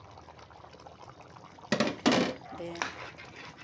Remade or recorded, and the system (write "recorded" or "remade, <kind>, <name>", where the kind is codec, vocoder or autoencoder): recorded